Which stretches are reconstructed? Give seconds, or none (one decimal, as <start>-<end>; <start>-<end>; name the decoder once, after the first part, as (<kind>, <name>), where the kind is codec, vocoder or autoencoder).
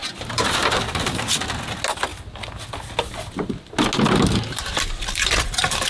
0.0-0.8 (vocoder, BigVGAN v2)